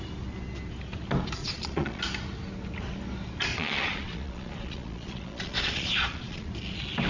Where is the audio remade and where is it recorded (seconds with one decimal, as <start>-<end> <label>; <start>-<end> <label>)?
0.0-1.4 recorded; 1.4-2.0 remade; 2.0-3.5 recorded; 3.5-6.5 remade; 6.5-7.1 recorded